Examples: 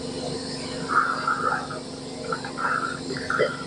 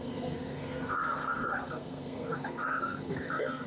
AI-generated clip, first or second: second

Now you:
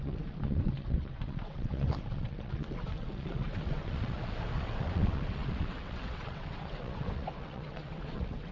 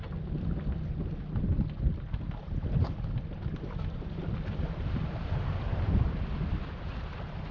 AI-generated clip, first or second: first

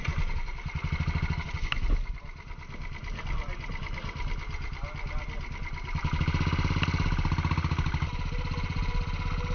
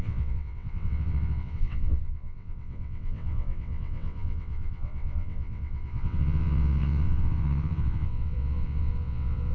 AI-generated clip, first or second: second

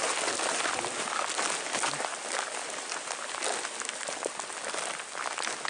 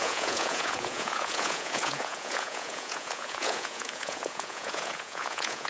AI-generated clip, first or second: second